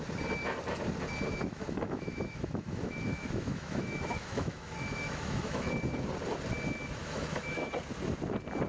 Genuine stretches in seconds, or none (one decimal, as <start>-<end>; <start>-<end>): 0.0-1.3; 5.7-7.0; 7.7-8.7